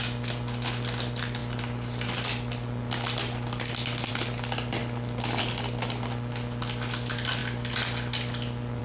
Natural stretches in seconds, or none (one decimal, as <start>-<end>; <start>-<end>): 0.0-8.8